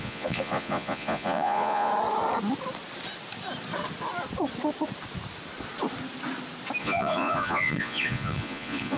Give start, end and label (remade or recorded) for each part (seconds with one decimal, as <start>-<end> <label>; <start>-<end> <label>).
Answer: 0.0-1.9 remade; 1.9-6.8 recorded; 6.8-9.0 remade